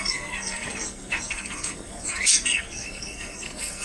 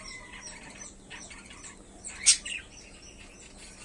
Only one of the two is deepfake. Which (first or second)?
first